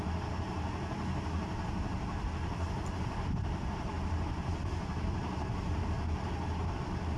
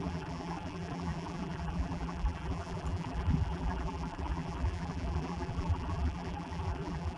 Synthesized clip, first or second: second